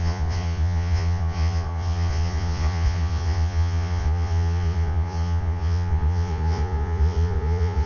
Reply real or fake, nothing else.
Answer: fake